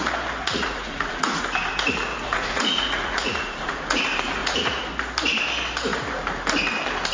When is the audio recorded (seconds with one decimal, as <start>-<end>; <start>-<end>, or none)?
0.0-0.4; 1.4-2.1; 4.0-4.4; 4.9-7.1